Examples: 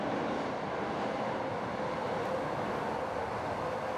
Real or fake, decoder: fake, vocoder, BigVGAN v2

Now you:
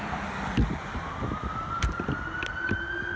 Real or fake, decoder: real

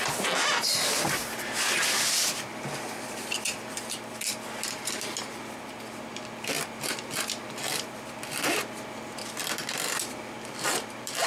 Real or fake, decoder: fake, vocoder, BigVGAN v2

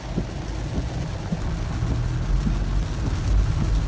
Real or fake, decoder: real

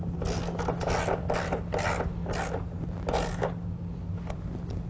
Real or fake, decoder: real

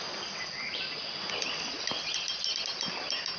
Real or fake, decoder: fake, vocoder, BigVGAN v2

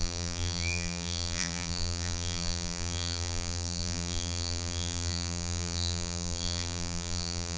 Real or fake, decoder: fake, vocoder, BigVGAN v2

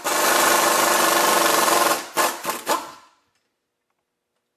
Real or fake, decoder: real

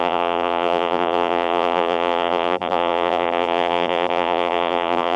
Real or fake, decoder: fake, vocoder, BigVGAN v2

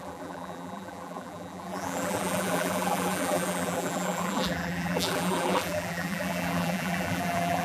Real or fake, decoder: fake, vocoder, BigVGAN v2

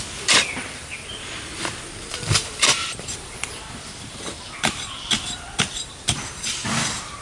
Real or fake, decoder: fake, vocoder, BigVGAN v2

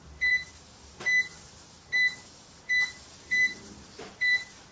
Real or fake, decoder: fake, vocoder, BigVGAN v2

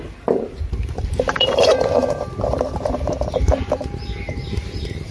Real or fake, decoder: fake, vocoder, BigVGAN v2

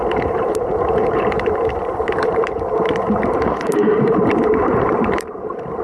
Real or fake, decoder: fake, vocoder, BigVGAN v2